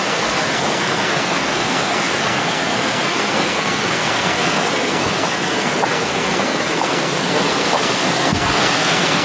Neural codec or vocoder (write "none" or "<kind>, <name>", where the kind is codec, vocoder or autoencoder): codec, SNAC